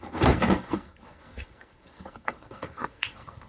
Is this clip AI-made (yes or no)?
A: yes